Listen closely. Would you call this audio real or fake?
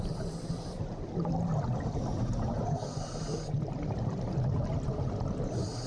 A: real